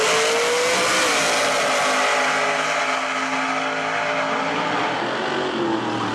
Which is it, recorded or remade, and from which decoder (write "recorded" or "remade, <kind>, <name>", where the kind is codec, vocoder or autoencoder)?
recorded